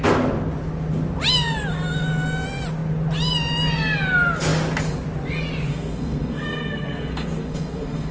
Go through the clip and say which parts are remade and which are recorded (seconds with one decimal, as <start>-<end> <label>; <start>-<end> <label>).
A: 0.0-5.7 recorded; 5.7-8.1 remade